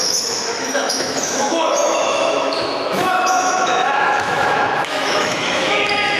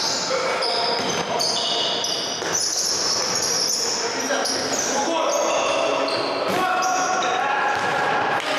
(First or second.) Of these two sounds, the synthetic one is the first